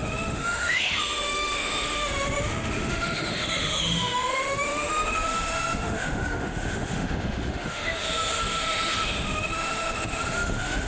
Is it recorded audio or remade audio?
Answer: remade